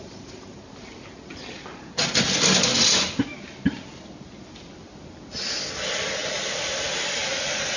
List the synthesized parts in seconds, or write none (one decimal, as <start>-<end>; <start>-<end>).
none